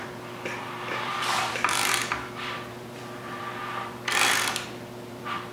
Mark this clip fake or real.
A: fake